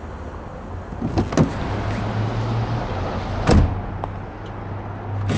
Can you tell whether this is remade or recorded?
recorded